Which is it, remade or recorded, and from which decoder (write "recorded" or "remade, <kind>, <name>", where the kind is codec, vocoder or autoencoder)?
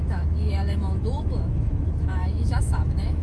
remade, autoencoder, DAC-VAE